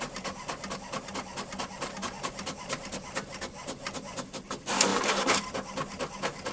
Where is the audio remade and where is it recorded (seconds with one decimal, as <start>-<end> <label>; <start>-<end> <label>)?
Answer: 0.0-4.9 recorded; 4.9-5.5 remade; 5.5-6.5 recorded